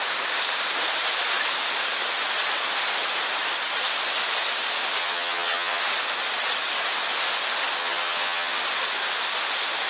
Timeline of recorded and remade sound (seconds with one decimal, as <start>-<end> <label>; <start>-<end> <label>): 0.0-5.0 recorded; 5.0-5.8 remade; 5.8-7.8 recorded; 7.8-8.6 remade; 8.6-9.9 recorded